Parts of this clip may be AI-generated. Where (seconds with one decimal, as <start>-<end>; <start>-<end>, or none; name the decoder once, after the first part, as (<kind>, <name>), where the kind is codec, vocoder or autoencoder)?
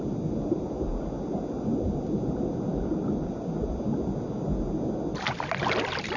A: 2.7-3.3 (vocoder, BigVGAN v2)